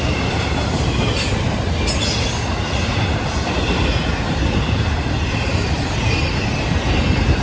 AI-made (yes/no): yes